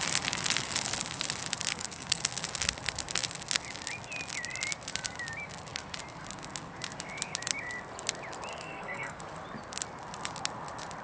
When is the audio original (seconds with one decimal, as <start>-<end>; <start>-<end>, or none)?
0.0-1.7; 2.2-8.5; 9.2-11.0